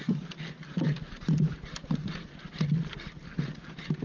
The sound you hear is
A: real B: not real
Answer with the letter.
A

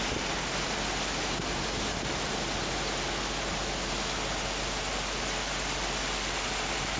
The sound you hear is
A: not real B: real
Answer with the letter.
B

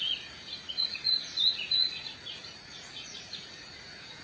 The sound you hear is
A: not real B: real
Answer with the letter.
A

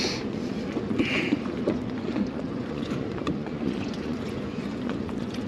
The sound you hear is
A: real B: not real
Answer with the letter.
B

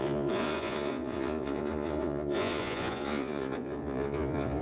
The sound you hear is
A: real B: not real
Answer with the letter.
B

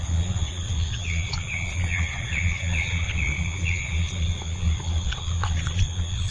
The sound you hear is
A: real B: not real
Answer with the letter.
B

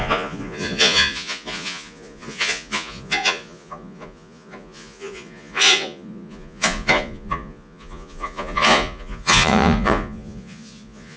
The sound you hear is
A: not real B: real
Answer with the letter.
A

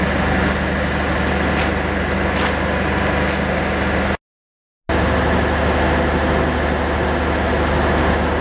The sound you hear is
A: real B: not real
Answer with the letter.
A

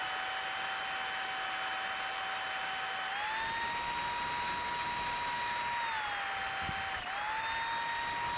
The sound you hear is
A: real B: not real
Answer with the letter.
A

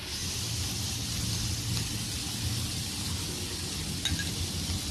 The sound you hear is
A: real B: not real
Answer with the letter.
A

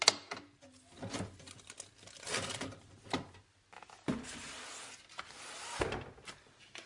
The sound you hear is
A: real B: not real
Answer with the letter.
A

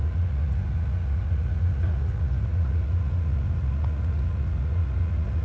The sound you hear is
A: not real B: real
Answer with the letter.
A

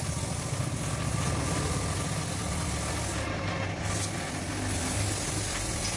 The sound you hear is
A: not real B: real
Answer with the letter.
B